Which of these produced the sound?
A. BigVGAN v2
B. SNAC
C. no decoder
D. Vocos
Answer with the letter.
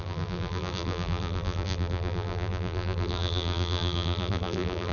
A